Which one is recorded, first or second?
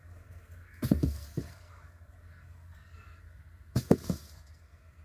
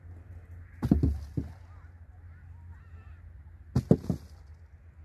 second